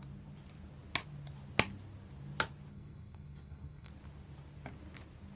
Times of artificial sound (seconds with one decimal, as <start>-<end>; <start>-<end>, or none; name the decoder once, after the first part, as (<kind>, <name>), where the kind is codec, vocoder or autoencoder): 2.7-3.9 (codec, SNAC)